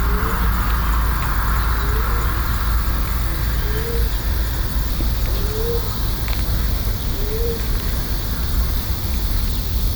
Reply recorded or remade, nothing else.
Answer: recorded